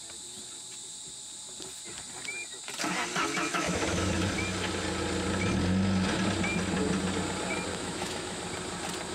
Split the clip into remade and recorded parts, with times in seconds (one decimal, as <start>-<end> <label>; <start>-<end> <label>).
0.0-3.5 recorded; 3.5-4.1 remade; 4.1-7.7 recorded; 7.7-8.4 remade; 8.4-9.1 recorded